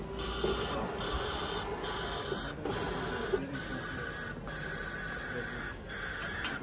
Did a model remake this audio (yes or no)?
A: no